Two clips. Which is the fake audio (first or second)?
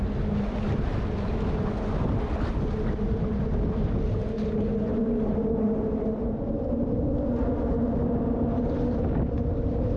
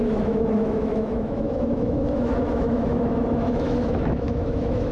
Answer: second